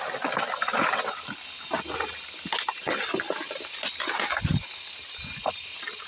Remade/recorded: recorded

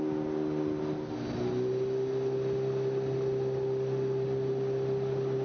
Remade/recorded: recorded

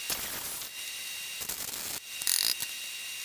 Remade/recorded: recorded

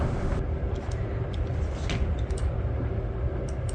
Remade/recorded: recorded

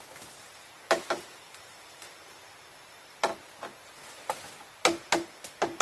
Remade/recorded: recorded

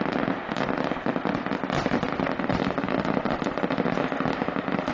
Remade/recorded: recorded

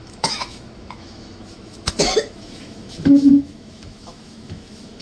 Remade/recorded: remade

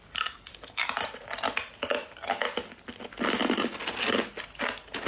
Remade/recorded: recorded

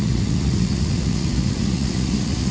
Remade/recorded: remade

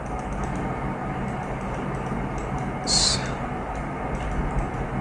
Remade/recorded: recorded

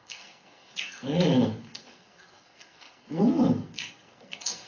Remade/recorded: remade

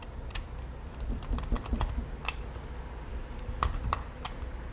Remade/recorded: recorded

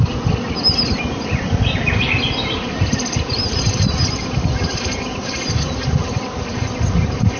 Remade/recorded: recorded